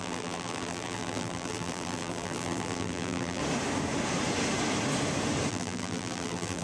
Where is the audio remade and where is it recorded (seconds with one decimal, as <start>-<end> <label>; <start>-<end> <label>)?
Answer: 0.0-3.4 remade; 3.4-5.5 recorded; 5.5-6.6 remade